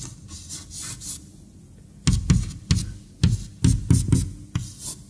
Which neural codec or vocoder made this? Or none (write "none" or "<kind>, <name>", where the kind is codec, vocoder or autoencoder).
none